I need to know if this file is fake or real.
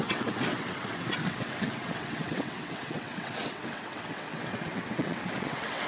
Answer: fake